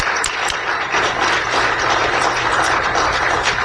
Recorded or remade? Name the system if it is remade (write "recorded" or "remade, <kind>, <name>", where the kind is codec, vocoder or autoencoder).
remade, vocoder, BigVGAN v2